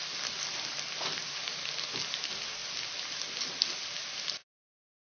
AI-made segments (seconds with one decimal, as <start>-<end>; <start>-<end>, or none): none